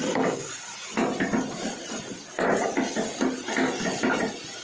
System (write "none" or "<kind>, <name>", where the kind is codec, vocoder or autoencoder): none